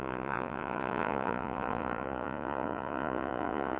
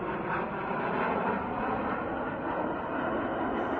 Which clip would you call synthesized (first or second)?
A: first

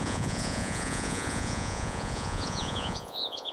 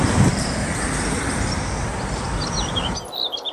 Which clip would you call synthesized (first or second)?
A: first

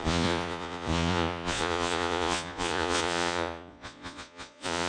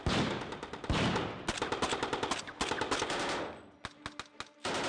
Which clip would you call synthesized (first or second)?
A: first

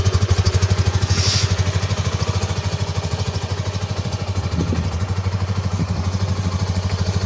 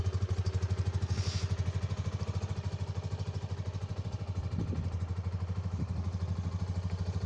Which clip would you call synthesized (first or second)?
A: first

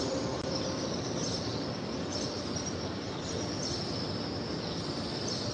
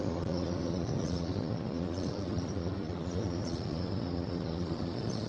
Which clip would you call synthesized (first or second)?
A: second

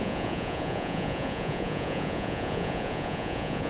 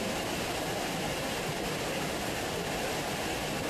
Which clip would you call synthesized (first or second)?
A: first